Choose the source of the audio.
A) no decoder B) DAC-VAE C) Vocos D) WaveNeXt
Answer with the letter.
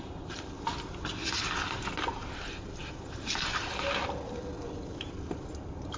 A